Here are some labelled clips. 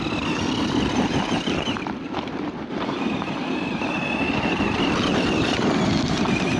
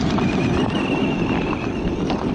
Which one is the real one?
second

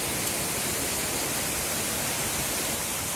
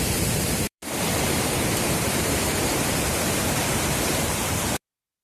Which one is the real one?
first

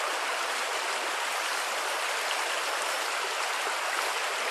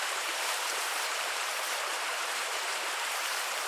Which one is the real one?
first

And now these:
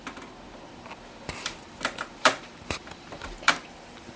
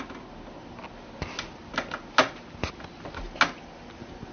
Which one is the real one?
second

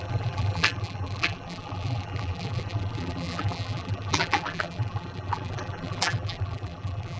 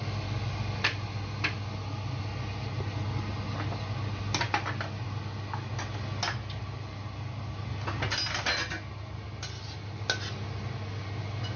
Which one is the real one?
second